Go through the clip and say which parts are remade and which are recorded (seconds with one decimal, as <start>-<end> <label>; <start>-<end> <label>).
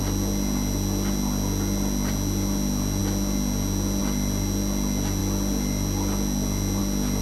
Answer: 0.0-7.2 recorded